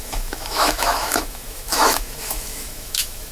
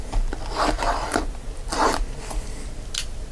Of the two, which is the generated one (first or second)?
first